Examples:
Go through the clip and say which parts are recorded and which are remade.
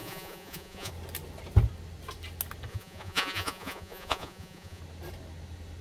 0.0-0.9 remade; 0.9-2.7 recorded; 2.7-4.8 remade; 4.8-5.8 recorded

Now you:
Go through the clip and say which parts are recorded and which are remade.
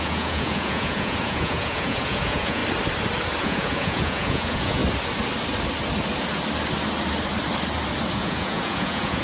0.0-2.6 remade; 2.6-3.4 recorded; 3.4-4.8 remade; 4.8-8.1 recorded; 8.1-9.2 remade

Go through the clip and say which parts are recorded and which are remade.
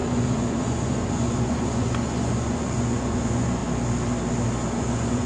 0.0-3.6 remade; 3.6-4.8 recorded; 4.8-5.3 remade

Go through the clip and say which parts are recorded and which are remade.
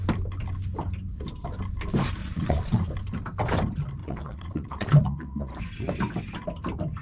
0.0-2.2 recorded; 2.2-2.9 remade; 2.9-4.0 recorded; 4.0-5.6 remade; 5.6-7.0 recorded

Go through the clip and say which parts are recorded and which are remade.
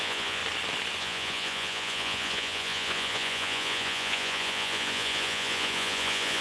0.0-0.4 remade; 0.4-1.0 recorded; 1.0-6.4 remade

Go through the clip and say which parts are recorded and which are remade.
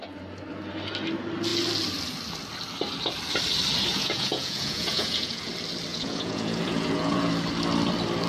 0.0-3.9 recorded; 3.9-5.5 remade; 5.5-5.9 recorded; 5.9-7.3 remade; 7.3-8.3 recorded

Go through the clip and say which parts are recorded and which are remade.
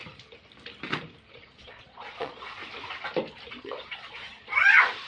0.0-1.3 recorded; 1.3-2.6 remade; 2.6-3.5 recorded; 3.5-5.1 remade